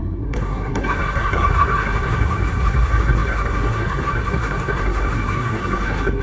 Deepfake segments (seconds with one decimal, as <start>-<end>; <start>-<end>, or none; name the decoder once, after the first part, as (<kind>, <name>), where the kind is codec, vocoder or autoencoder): 0.0-6.2 (codec, SNAC)